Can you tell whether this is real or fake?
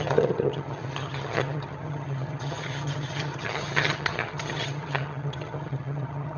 fake